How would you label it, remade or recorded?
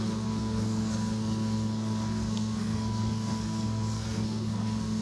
remade